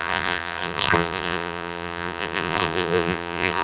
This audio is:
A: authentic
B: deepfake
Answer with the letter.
B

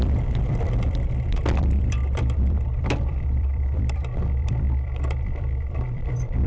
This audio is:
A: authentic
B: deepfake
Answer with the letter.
B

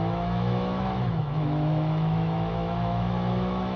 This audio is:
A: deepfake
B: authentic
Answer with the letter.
A